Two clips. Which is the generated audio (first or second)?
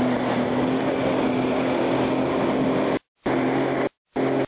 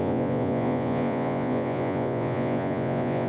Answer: second